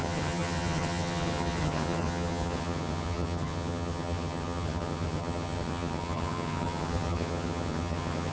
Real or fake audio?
fake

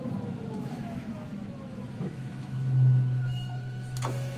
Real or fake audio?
fake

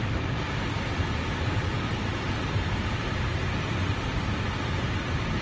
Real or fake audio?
real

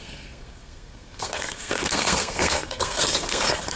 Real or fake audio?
fake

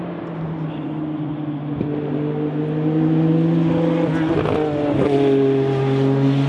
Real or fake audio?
real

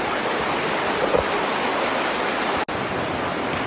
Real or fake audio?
real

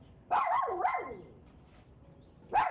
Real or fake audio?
fake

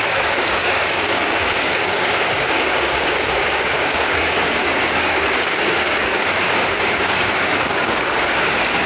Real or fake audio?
fake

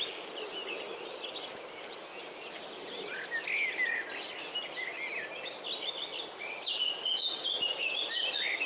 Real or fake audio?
real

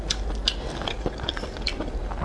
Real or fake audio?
real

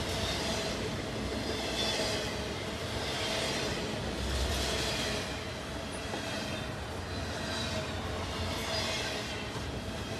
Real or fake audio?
real